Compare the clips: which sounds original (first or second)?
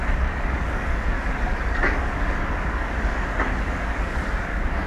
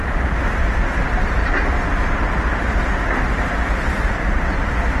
second